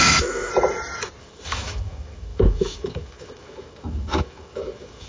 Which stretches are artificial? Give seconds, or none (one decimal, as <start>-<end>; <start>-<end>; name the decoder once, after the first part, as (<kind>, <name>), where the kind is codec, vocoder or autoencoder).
0.0-0.5 (autoencoder, DAC-VAE); 1.2-5.1